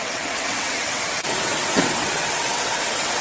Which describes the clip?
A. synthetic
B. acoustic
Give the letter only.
A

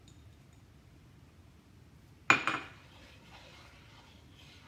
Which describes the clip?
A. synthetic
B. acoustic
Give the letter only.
B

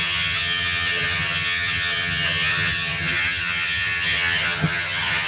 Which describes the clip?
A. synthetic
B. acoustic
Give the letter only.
A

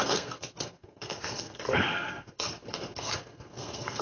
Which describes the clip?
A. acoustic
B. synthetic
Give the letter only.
B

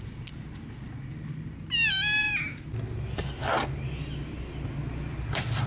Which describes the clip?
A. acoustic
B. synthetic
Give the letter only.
A